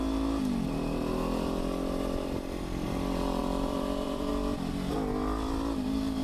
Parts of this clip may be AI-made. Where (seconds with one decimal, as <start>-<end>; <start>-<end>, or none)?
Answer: 3.4-4.3

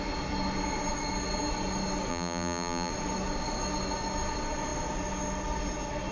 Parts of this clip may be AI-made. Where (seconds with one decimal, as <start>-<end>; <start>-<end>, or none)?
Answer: 2.1-2.9

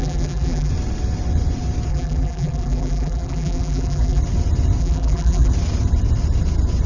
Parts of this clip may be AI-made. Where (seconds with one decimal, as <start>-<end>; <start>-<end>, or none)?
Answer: 0.0-0.7; 1.9-4.2; 4.8-5.5